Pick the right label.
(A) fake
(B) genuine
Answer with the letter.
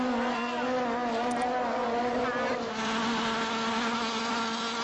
B